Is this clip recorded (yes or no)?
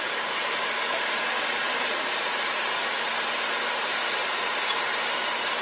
no